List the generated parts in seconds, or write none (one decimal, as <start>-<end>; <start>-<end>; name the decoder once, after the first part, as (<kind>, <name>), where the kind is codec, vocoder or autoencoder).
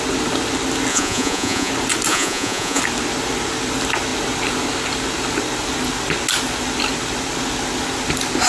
0.9-1.7 (vocoder, Vocos); 2.1-2.8